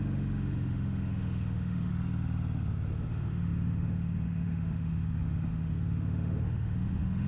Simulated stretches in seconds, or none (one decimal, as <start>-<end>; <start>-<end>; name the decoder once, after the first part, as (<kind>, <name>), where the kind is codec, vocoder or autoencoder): 0.0-1.9 (autoencoder, DAC-VAE); 3.1-7.3